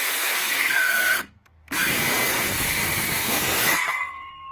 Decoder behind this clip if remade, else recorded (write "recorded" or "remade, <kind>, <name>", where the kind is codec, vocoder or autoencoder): remade, codec, SNAC